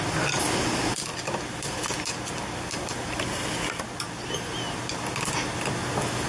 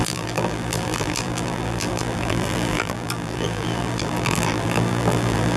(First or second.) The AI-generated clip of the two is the second